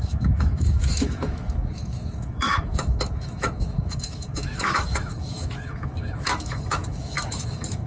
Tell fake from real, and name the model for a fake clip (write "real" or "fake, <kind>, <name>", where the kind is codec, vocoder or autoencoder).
fake, autoencoder, DAC-VAE